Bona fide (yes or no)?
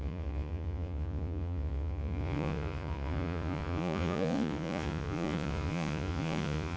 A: no